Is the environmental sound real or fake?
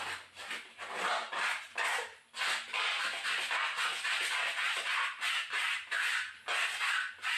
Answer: real